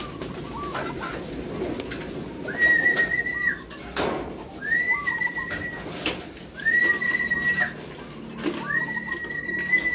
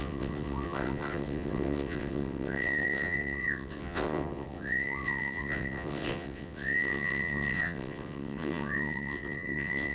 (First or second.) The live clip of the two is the first